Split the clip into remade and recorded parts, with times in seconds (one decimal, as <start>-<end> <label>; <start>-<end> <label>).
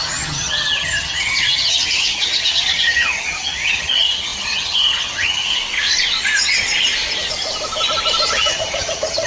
0.0-5.6 remade; 5.6-8.3 recorded; 8.3-9.3 remade